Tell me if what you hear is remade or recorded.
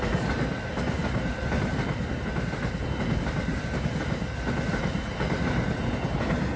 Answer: recorded